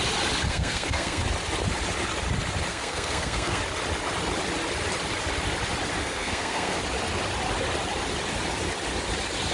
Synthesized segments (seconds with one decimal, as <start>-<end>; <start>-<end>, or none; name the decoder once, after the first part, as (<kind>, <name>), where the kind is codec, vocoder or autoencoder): 0.5-1.2 (codec, SNAC); 2.7-3.6; 6.0-6.8